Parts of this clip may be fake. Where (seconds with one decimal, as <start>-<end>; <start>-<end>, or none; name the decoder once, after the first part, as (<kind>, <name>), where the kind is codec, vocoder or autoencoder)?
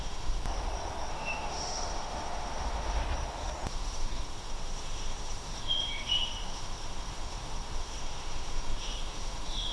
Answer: 0.0-0.4 (autoencoder, DAC-VAE); 1.1-3.0; 3.7-9.7